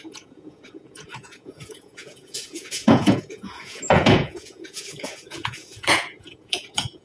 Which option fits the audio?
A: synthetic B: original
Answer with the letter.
A